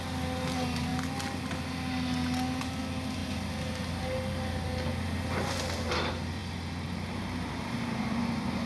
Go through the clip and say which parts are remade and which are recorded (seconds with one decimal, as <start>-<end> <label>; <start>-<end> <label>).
0.0-8.7 recorded